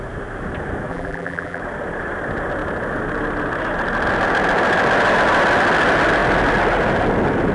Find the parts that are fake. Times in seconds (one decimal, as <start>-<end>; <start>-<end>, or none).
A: 0.9-1.6